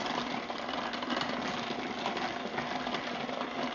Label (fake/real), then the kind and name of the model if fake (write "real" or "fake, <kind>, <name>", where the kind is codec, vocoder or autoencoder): real